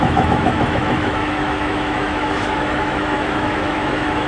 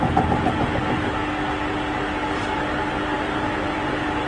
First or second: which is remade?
first